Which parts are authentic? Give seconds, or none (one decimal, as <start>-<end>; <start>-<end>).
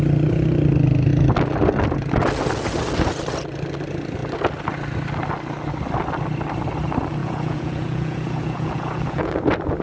0.0-7.2; 9.3-9.8